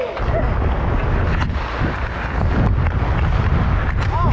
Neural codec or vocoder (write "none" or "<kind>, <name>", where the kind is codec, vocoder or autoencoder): none